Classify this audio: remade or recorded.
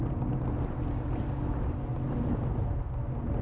recorded